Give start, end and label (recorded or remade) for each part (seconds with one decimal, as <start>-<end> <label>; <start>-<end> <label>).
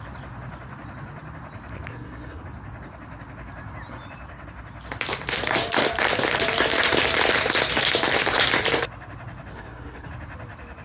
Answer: 0.0-1.9 recorded; 1.9-2.4 remade; 2.4-9.5 recorded; 9.5-10.1 remade; 10.1-10.8 recorded